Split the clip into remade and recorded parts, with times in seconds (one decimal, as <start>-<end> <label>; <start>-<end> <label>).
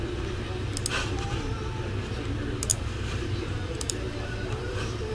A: 0.0-2.7 recorded; 2.7-5.1 remade